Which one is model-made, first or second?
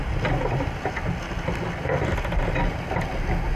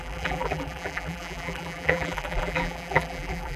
second